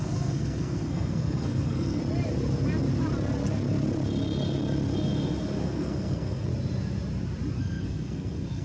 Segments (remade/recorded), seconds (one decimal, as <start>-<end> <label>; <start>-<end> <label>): 0.0-2.0 remade; 2.0-5.6 recorded; 5.6-6.5 remade; 6.5-7.6 recorded; 7.6-8.6 remade